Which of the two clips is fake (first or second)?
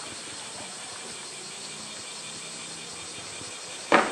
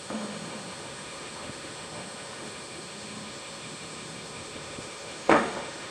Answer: second